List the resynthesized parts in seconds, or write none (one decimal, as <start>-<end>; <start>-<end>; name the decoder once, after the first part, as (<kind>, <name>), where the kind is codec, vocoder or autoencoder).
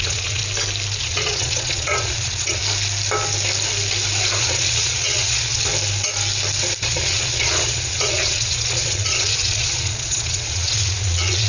0.0-0.4 (vocoder, Vocos); 1.0-2.6; 4.4-5.7; 6.8-11.5